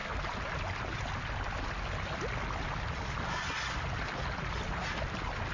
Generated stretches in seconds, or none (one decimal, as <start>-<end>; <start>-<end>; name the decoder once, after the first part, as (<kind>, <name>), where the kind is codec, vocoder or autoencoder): none